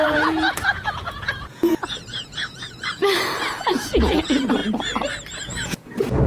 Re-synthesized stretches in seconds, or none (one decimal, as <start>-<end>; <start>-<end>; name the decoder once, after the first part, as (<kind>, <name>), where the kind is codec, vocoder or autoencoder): 0.0-3.0 (vocoder, Vocos); 3.7-4.6; 5.4-6.3